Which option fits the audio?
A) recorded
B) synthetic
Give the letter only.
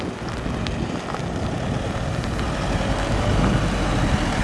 A